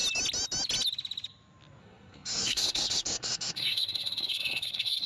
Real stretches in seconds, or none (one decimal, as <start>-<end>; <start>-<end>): 0.0-1.8